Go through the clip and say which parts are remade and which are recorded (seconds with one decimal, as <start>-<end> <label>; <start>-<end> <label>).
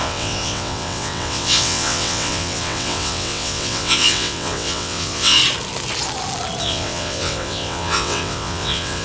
0.0-5.4 remade; 5.4-6.6 recorded; 6.6-9.0 remade